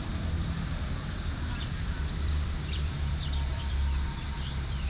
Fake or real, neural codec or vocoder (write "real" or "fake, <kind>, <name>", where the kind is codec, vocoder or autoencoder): fake, vocoder, BigVGAN v2